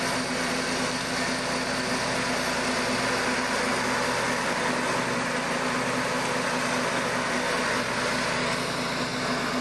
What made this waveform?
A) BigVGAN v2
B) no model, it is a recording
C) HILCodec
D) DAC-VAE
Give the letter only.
B